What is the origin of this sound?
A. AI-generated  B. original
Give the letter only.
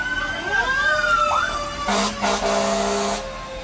B